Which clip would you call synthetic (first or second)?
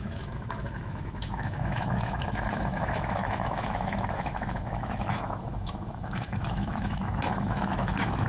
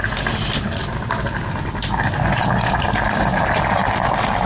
first